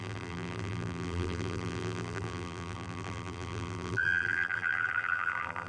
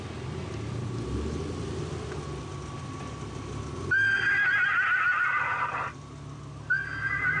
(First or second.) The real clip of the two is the second